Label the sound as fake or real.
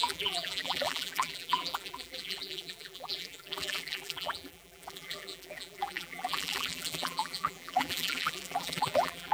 fake